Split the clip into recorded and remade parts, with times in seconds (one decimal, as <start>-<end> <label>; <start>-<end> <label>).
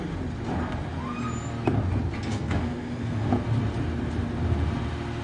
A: 0.0-2.3 recorded; 2.3-3.3 remade; 3.3-5.2 recorded